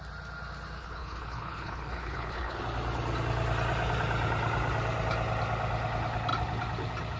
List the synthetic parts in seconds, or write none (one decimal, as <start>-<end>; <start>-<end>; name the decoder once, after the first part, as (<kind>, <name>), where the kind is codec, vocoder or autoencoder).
0.8-2.6 (codec, HILCodec)